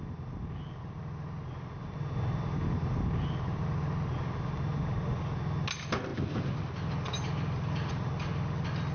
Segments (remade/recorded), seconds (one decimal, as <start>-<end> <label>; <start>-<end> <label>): 0.0-8.9 recorded